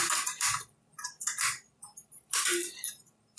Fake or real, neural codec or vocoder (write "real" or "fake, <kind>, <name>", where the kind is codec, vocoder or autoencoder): fake, vocoder, BigVGAN v2